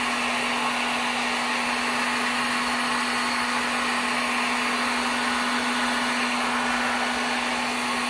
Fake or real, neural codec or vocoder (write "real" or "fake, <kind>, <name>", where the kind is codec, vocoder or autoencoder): real